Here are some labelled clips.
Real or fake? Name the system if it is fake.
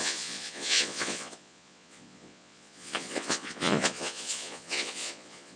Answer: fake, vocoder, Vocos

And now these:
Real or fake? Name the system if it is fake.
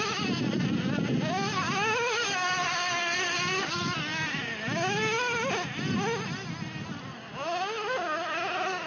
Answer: real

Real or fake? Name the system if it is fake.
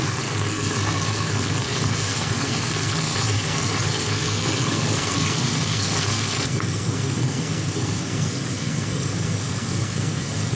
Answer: fake, codec, SNAC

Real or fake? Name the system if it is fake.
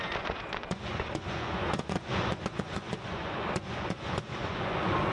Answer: fake, vocoder, Vocos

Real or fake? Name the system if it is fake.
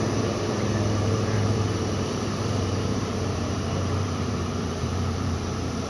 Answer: fake, vocoder, BigVGAN v2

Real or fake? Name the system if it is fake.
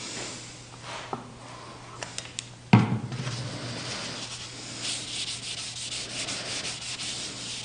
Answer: real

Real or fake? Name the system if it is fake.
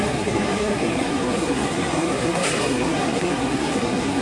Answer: fake, codec, SNAC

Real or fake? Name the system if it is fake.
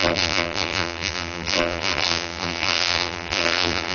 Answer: fake, vocoder, BigVGAN v2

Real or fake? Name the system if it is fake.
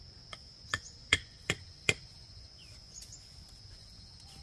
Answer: fake, vocoder, Vocos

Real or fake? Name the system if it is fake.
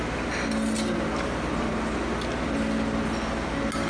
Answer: real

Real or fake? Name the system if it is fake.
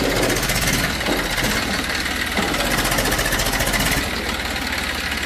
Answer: real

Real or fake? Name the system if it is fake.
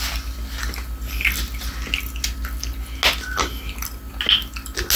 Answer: real